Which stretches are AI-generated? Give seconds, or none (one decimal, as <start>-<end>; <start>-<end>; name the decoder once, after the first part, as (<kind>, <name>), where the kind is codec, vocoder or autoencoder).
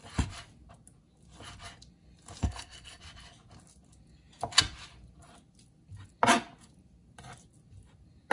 2.4-3.0 (codec, SNAC)